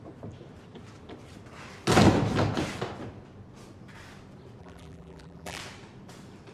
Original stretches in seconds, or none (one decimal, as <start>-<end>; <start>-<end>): 0.0-4.6; 5.6-6.5